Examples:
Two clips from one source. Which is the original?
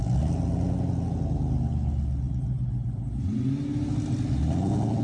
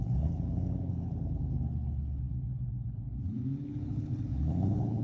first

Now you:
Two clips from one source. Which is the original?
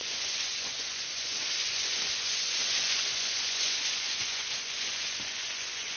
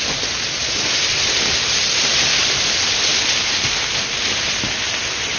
second